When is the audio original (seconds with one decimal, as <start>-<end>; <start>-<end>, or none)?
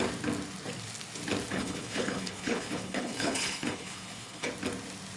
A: 0.0-1.5; 4.5-5.2